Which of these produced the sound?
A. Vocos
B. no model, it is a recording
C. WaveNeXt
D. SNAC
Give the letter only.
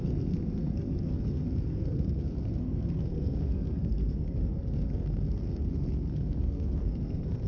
D